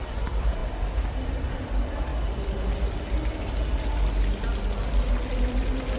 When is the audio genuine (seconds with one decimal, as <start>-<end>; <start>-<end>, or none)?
2.1-6.0